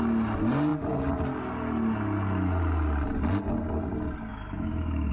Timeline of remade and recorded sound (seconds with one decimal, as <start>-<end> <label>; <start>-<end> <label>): 0.0-4.3 recorded; 4.3-5.1 remade